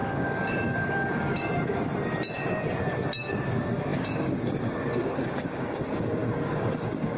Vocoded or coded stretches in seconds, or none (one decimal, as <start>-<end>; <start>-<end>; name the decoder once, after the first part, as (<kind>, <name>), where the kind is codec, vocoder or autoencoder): 0.0-1.9 (codec, DAC); 3.3-7.2